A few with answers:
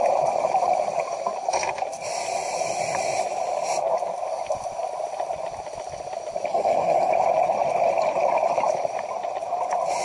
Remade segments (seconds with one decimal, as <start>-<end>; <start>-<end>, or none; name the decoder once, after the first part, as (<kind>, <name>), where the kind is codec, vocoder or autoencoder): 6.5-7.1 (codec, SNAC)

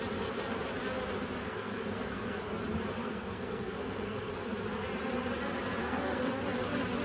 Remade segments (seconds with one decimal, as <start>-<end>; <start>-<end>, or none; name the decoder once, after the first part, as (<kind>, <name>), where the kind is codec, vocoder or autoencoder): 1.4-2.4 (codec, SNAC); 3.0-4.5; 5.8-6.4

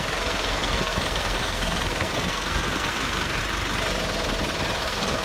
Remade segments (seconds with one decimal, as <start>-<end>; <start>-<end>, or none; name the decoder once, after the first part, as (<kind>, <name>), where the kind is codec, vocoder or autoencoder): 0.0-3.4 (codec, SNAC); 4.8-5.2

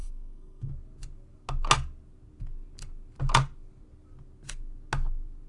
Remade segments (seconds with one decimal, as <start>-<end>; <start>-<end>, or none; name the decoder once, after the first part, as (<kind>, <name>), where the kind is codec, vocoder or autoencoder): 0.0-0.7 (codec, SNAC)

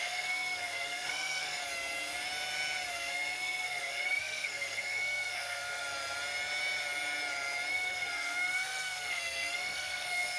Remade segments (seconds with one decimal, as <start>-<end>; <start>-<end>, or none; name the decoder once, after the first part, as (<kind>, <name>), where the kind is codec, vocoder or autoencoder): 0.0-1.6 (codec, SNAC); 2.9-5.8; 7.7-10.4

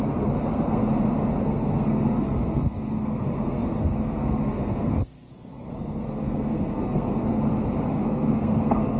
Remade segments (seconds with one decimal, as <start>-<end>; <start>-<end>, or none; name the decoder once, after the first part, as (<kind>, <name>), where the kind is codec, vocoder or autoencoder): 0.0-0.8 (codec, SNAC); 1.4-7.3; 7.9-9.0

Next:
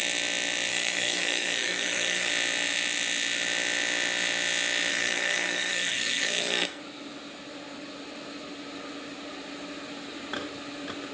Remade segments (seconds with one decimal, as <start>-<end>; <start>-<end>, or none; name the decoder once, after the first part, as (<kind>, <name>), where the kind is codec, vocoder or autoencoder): 0.7-2.3 (codec, SNAC); 4.9-6.8